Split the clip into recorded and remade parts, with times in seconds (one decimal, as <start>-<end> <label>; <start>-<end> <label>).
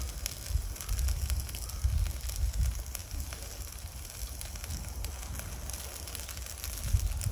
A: 0.0-7.3 recorded